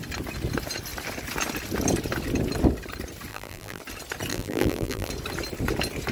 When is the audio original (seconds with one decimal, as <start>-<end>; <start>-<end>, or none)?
0.0-3.3; 3.8-4.3; 5.1-6.1